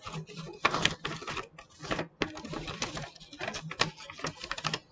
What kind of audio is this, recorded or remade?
recorded